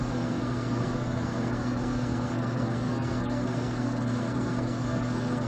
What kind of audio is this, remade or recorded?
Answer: remade